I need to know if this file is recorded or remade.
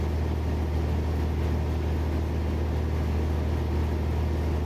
recorded